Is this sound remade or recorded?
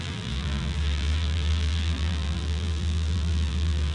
remade